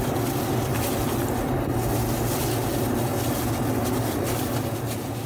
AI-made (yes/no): no